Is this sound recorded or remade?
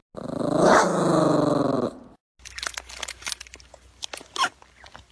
recorded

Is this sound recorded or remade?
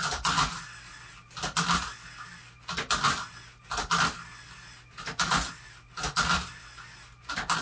recorded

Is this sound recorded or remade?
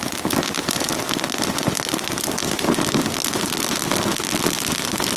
recorded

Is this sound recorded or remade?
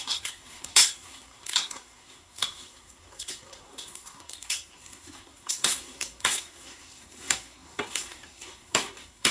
remade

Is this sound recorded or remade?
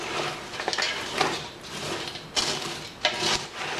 recorded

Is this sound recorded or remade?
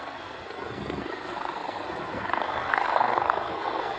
remade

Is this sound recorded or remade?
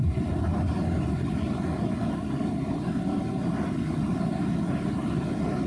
recorded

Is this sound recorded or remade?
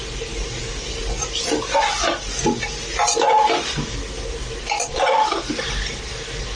recorded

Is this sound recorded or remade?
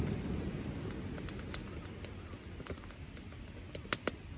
recorded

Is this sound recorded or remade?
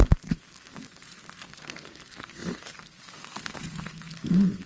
remade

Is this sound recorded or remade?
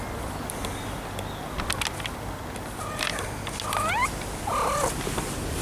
recorded